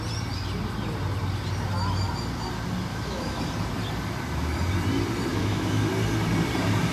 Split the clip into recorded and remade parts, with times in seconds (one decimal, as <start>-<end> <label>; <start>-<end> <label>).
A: 0.0-2.9 recorded; 2.9-3.4 remade; 3.4-5.3 recorded; 5.3-5.9 remade; 5.9-6.9 recorded